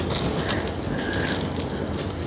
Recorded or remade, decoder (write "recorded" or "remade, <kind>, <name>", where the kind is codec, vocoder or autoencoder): recorded